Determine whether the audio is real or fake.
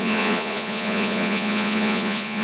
fake